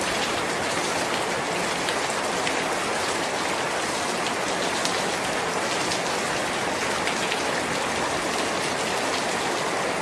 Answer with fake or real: real